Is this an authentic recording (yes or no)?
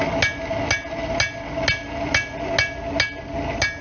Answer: yes